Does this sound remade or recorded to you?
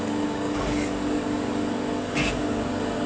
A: remade